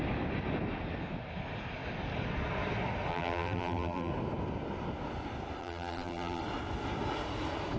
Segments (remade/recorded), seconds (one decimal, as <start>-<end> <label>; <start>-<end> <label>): 0.0-3.1 recorded; 3.1-4.1 remade; 4.1-5.6 recorded; 5.6-6.4 remade; 6.4-7.8 recorded